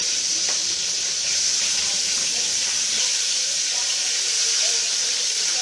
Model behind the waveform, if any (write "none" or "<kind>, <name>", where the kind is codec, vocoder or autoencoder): vocoder, BigVGAN v2